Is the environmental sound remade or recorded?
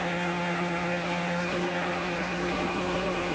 remade